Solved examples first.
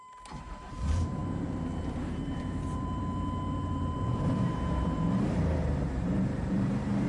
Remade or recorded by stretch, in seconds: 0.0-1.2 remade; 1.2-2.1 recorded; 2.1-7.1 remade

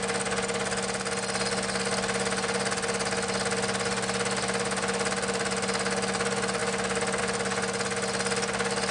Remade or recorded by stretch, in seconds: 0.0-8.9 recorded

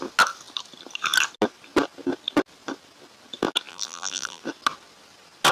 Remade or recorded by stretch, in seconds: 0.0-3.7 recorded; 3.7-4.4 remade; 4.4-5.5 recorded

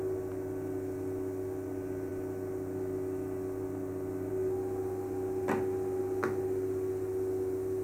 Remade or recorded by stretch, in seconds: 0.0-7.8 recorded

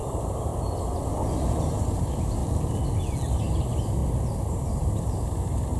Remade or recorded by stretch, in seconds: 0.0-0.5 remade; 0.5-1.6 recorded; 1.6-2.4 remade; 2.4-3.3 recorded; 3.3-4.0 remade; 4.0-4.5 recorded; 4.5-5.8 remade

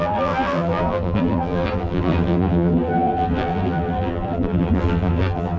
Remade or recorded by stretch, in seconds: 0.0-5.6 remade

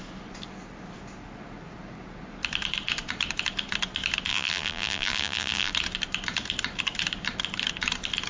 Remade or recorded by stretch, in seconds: 0.0-4.3 recorded; 4.3-5.7 remade; 5.7-8.3 recorded

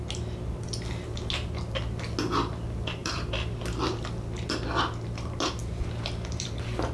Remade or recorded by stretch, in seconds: 0.0-3.0 recorded; 3.0-3.5 remade; 3.5-5.6 recorded; 5.6-6.5 remade; 6.5-6.9 recorded